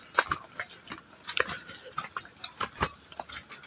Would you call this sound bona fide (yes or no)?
yes